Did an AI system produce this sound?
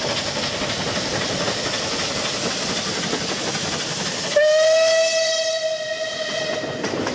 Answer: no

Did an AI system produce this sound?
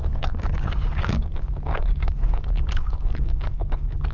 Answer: yes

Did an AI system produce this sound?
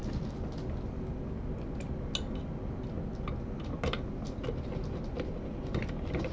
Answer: no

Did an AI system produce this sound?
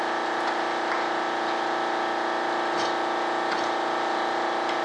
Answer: no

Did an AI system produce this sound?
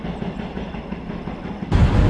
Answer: no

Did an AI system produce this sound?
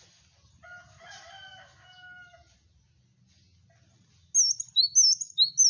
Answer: no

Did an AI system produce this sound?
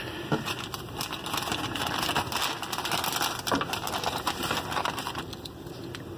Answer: no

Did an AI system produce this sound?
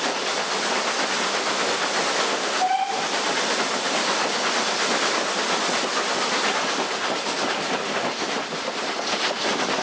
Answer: no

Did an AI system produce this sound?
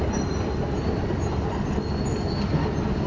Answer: no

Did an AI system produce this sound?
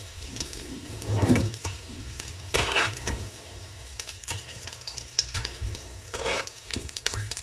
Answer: yes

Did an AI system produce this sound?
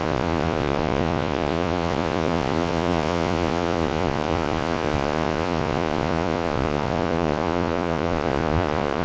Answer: yes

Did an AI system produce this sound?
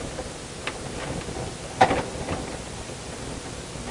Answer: no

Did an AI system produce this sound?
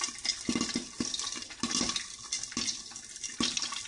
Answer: no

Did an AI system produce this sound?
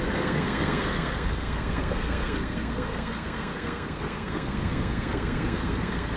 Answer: yes